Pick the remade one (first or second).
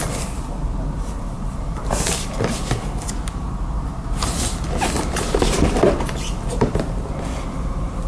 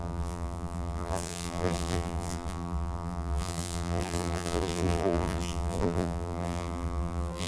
second